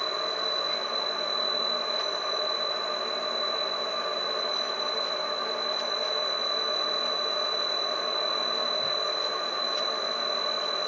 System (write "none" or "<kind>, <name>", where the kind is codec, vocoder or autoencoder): none